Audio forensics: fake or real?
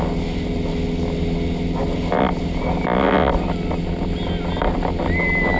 real